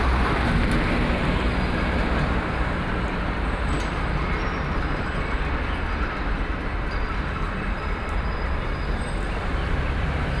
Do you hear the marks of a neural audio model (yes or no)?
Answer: no